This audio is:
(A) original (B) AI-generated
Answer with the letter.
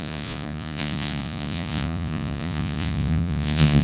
B